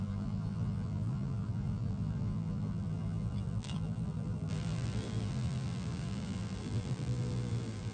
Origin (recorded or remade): remade